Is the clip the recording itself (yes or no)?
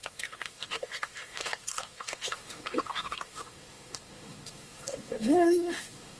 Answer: no